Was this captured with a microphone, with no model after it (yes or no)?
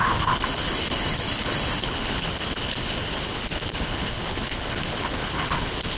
no